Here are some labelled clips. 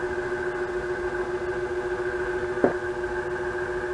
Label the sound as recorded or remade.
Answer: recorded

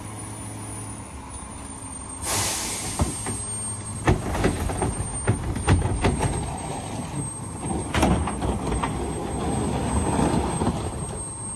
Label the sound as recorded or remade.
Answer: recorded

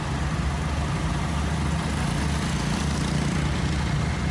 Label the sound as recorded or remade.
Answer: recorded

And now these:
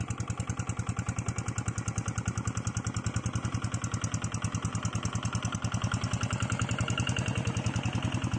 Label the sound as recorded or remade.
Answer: recorded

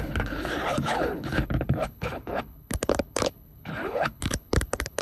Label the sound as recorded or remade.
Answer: remade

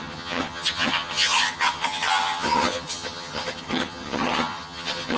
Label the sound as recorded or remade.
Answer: remade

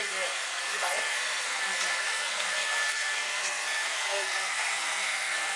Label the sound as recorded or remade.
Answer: remade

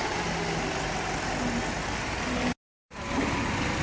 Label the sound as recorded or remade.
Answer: recorded